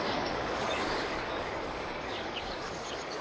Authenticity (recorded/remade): remade